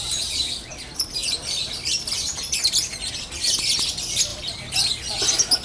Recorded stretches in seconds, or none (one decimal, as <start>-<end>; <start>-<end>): 0.0-1.2; 3.1-4.3; 4.9-5.6